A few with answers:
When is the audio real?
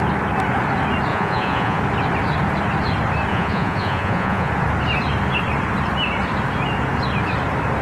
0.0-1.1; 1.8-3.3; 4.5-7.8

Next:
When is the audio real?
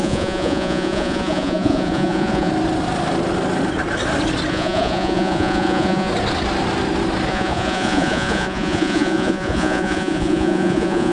2.5-4.5; 6.1-7.3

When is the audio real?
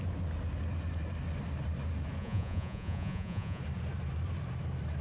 0.0-2.2; 3.6-5.0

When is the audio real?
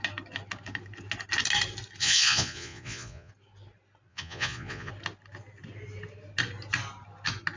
0.0-2.0; 3.3-4.1; 4.9-7.6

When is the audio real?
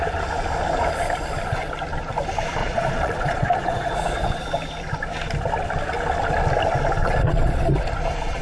0.0-2.6; 4.4-7.0; 7.7-8.4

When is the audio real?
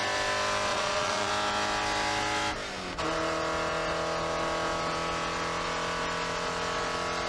0.0-0.7; 1.3-7.3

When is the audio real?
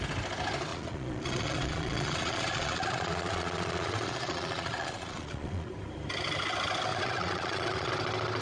0.0-0.7; 5.7-6.9; 7.9-8.4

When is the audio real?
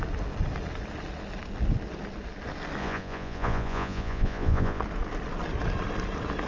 0.0-2.8; 4.8-6.5